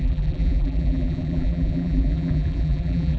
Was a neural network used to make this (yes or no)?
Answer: yes